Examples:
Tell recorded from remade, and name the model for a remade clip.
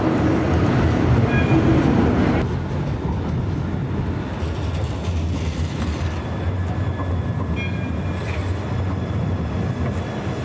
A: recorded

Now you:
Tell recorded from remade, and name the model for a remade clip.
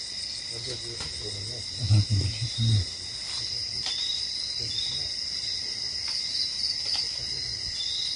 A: recorded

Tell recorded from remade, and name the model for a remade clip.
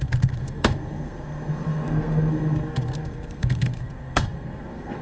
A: remade, codec, SNAC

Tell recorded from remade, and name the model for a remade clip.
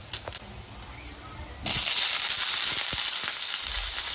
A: recorded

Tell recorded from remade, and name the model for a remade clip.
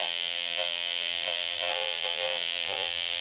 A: remade, vocoder, BigVGAN v2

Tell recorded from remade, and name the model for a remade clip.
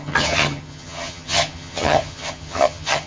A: remade, vocoder, HiFi-GAN